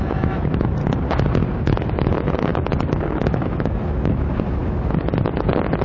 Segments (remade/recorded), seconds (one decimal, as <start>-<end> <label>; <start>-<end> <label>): 0.0-0.8 remade; 0.8-1.6 recorded; 1.6-5.8 remade